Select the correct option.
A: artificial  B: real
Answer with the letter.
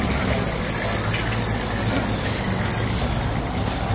B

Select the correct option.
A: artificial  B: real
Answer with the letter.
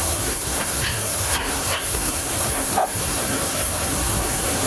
A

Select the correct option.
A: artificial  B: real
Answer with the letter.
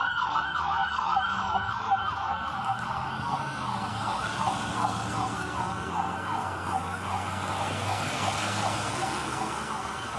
A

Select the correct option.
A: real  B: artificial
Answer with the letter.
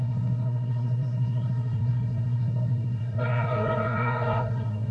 B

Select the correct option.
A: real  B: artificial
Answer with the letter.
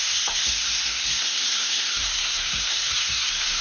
B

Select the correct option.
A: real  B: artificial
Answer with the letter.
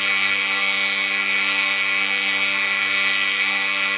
B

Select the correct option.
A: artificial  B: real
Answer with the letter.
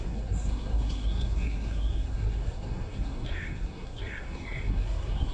A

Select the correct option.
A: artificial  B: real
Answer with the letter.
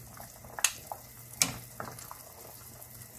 B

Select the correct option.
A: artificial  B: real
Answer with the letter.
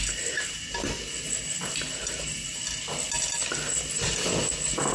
B